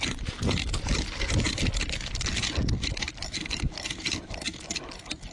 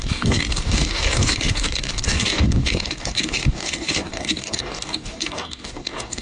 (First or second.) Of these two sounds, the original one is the first